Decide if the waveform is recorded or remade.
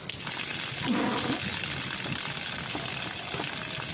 recorded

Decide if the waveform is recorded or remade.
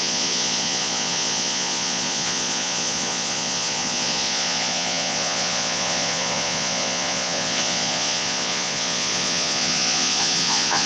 remade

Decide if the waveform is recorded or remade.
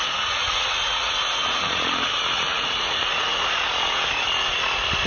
remade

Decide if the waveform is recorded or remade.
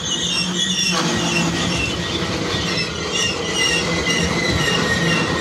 recorded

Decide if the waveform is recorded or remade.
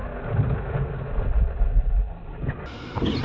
recorded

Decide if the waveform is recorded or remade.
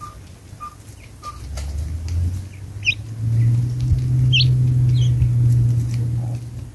recorded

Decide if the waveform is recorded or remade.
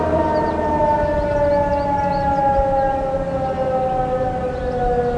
recorded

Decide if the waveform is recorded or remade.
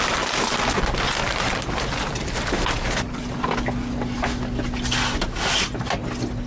recorded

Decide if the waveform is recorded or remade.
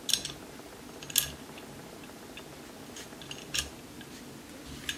recorded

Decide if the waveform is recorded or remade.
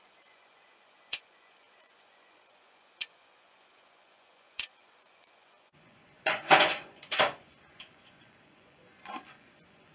remade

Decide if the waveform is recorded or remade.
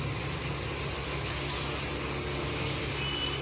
recorded